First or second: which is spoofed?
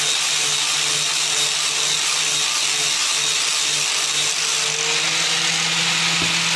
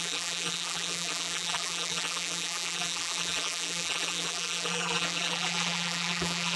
second